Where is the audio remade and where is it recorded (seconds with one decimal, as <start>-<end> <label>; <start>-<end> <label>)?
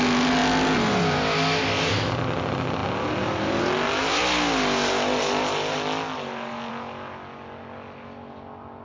0.0-8.8 recorded